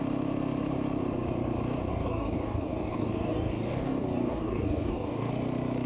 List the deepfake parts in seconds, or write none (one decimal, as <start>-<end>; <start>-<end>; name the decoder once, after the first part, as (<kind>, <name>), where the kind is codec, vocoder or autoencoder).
1.9-5.3 (codec, DAC)